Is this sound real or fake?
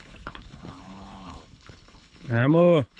fake